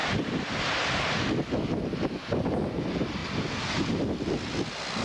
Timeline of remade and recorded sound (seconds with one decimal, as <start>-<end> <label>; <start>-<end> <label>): 0.0-0.6 remade; 0.6-5.0 recorded